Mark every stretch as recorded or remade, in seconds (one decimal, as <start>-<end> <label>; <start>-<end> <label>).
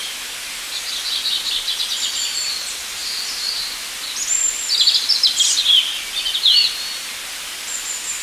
0.0-8.2 recorded